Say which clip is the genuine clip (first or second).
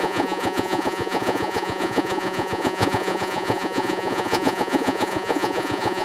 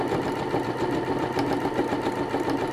second